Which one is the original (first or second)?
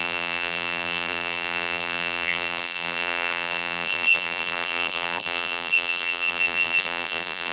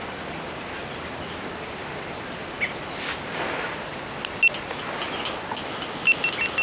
second